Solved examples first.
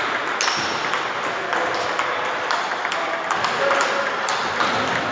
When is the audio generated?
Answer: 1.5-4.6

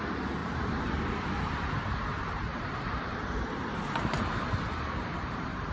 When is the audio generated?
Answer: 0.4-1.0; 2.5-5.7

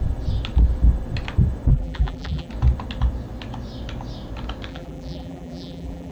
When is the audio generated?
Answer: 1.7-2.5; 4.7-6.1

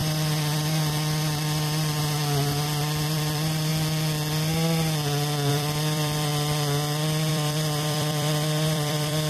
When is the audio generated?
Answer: 0.0-3.7; 5.5-6.3; 7.3-9.3

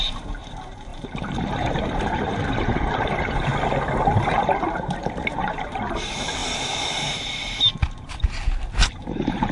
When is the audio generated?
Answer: 0.0-3.5; 4.2-9.5

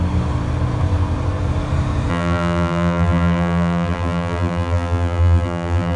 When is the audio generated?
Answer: 2.1-6.0